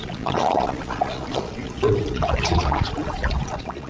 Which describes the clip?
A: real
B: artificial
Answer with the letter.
B